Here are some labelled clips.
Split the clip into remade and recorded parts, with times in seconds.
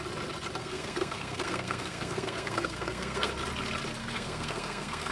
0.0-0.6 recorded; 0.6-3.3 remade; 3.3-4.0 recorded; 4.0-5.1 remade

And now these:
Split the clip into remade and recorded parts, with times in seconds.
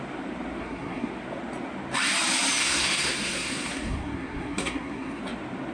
0.0-0.6 recorded; 0.6-1.1 remade; 1.1-2.6 recorded; 2.6-5.2 remade; 5.2-5.7 recorded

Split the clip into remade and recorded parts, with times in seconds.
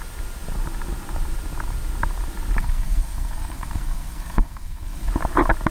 0.0-2.6 recorded; 2.6-5.1 remade; 5.1-5.7 recorded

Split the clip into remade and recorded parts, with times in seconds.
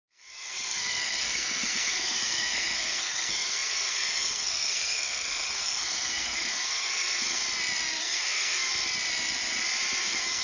0.0-7.4 remade; 7.4-8.0 recorded; 8.0-8.7 remade; 8.7-10.0 recorded; 10.0-10.4 remade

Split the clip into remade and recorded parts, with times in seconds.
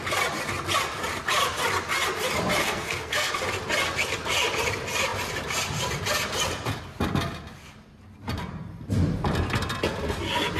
0.0-2.6 recorded; 2.6-3.3 remade; 3.3-10.6 recorded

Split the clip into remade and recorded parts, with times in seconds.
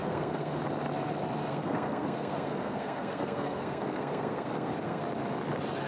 0.0-0.6 remade; 0.6-1.5 recorded; 1.5-5.0 remade; 5.0-5.9 recorded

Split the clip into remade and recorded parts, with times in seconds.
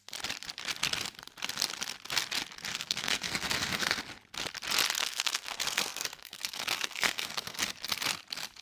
0.0-2.7 recorded; 2.7-4.0 remade; 4.0-5.0 recorded; 5.0-7.6 remade; 7.6-8.6 recorded